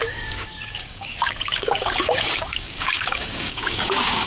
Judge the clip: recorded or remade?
remade